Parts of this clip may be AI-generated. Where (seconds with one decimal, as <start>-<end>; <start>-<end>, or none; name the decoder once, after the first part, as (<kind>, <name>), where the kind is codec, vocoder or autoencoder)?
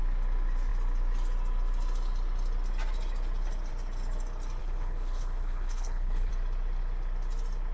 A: 4.6-6.3 (codec, HILCodec)